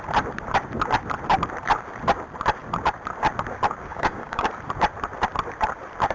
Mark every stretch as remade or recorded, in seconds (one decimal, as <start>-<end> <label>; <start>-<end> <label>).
0.0-3.9 recorded; 3.9-4.5 remade; 4.5-6.1 recorded